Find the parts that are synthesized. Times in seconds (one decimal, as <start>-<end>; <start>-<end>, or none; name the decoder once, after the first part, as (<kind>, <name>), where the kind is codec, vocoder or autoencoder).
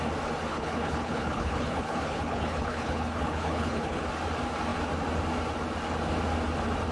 0.5-4.0 (codec, HILCodec)